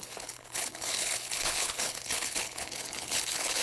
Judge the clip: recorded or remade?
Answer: remade